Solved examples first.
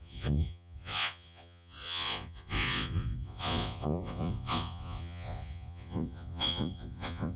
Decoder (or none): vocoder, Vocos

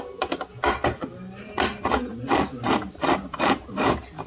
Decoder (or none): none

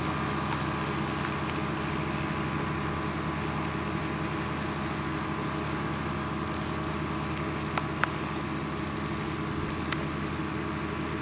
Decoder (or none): none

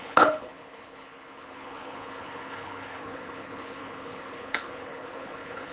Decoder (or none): codec, HILCodec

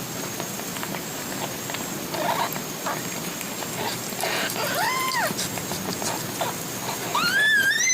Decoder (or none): none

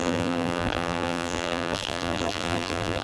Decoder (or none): vocoder, BigVGAN v2